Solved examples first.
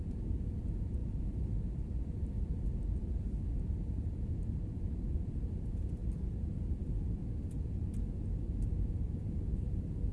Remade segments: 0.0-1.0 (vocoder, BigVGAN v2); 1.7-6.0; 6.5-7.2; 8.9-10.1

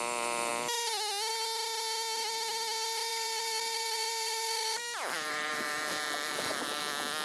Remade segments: 3.1-6.8 (vocoder, BigVGAN v2)

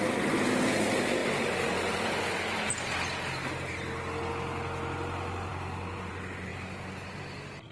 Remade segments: none

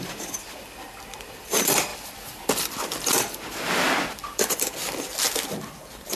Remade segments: 0.0-6.2 (vocoder, BigVGAN v2)

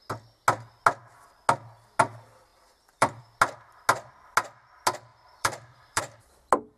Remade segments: 2.5-3.2 (vocoder, BigVGAN v2); 5.1-6.0

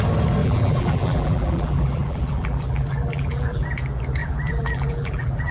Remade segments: 0.4-3.7 (vocoder, BigVGAN v2); 4.2-5.5

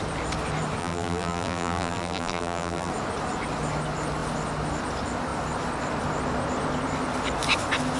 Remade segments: 0.8-2.9 (vocoder, BigVGAN v2)

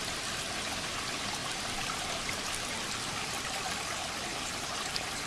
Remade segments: 4.3-5.3 (vocoder, BigVGAN v2)